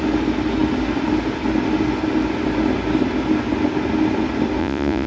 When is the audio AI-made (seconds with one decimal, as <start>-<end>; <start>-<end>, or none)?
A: 4.6-5.1